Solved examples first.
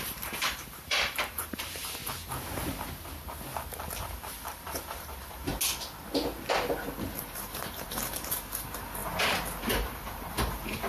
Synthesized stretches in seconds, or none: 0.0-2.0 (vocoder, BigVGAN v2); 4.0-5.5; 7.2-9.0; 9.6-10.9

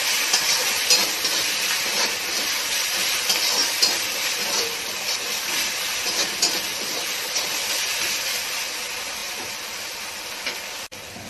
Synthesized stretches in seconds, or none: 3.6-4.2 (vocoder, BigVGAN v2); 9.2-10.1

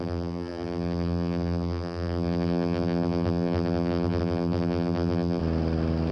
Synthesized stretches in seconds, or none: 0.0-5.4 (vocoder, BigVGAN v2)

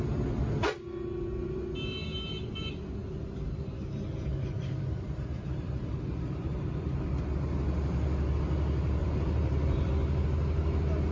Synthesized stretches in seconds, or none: 4.3-7.4 (vocoder, BigVGAN v2); 9.0-9.9